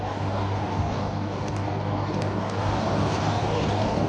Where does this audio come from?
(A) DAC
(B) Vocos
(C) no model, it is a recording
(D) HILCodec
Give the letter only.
A